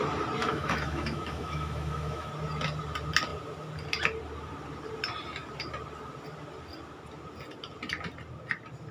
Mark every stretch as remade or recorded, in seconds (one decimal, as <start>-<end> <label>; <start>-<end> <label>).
0.0-0.4 recorded; 0.4-2.3 remade; 2.3-8.9 recorded